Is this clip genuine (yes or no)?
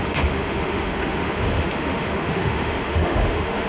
no